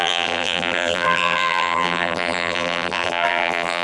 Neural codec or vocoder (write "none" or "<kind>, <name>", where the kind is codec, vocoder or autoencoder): vocoder, BigVGAN v2